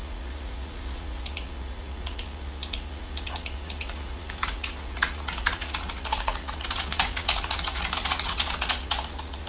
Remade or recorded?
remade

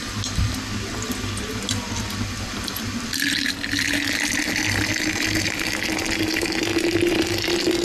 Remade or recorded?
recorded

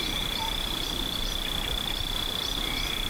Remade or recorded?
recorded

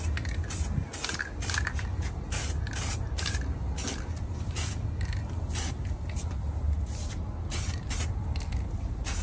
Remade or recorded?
recorded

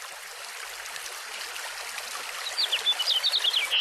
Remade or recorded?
recorded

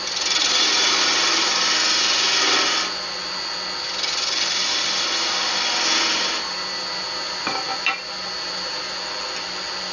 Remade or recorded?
recorded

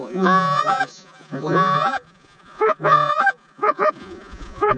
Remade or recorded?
remade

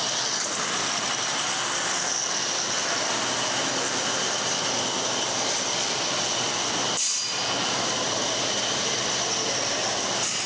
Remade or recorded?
recorded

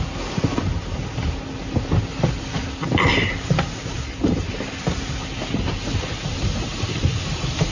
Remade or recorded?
recorded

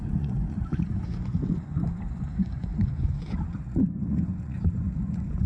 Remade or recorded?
remade